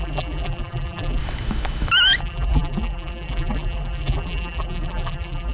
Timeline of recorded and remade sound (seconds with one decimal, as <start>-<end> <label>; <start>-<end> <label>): 0.0-1.2 remade; 1.2-2.2 recorded; 2.2-5.5 remade